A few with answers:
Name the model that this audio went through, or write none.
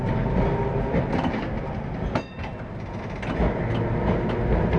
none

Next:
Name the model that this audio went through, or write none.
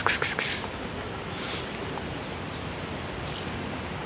none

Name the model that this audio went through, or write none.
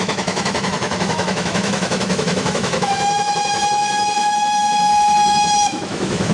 autoencoder, DAC-VAE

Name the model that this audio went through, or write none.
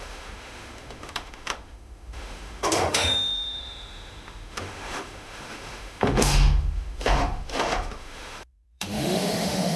autoencoder, DAC-VAE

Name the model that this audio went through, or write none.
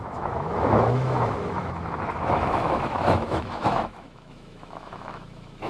autoencoder, DAC-VAE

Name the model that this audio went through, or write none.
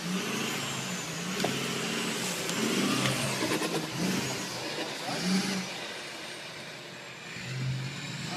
none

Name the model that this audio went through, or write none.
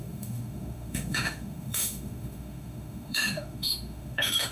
autoencoder, DAC-VAE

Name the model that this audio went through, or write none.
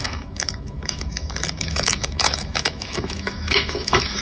autoencoder, DAC-VAE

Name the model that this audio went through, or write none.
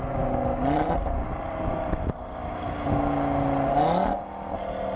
none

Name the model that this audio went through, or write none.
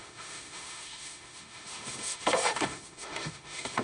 autoencoder, DAC-VAE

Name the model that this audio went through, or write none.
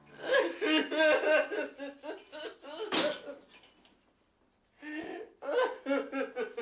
none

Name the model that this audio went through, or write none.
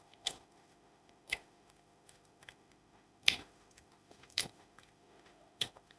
autoencoder, DAC-VAE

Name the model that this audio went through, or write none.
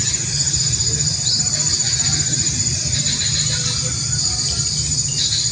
none